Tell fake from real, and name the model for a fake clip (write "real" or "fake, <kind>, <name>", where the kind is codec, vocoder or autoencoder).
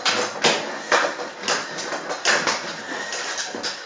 real